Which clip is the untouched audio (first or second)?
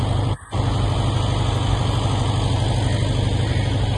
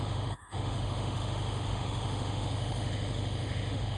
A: first